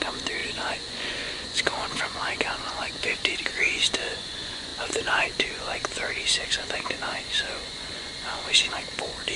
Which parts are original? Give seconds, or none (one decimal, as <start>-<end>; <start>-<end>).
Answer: none